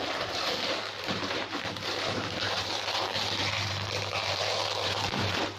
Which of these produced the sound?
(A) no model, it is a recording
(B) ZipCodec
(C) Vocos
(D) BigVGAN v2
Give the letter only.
D